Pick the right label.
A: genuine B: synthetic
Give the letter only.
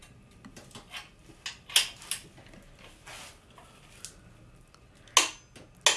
A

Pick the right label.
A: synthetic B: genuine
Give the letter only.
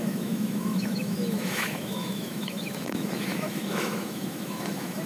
A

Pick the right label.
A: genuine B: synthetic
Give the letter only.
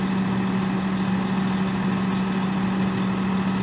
A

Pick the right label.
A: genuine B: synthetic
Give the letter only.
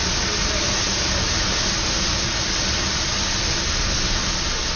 A